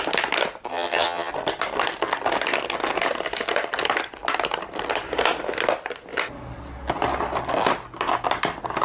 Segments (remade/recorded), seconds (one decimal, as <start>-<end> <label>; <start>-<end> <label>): 0.0-0.7 recorded; 0.7-1.3 remade; 1.3-8.8 recorded